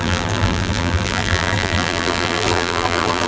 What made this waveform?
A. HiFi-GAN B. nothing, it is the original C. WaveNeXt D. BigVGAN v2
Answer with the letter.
D